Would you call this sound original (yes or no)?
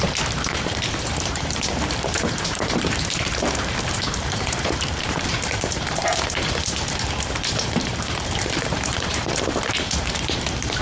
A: no